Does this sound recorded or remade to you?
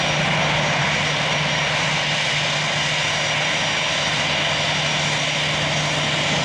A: recorded